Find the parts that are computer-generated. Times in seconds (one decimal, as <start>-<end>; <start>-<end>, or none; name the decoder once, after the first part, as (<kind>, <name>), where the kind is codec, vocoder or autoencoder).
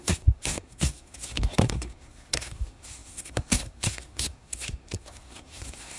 0.0-6.0 (codec, SNAC)